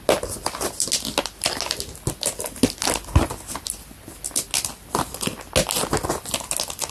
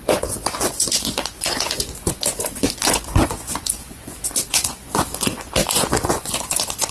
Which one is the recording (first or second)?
first